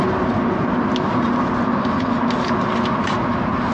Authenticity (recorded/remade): recorded